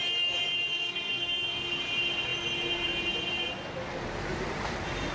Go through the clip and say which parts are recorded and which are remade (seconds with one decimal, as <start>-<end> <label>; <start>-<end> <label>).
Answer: 0.0-0.7 recorded; 0.7-1.7 remade; 1.7-5.1 recorded